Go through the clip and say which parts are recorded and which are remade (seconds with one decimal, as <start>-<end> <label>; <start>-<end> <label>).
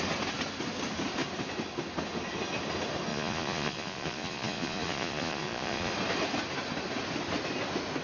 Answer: 0.0-3.1 recorded; 3.1-5.9 remade; 5.9-8.0 recorded